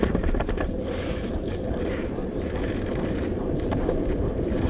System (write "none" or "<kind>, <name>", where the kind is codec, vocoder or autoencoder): vocoder, BigVGAN v2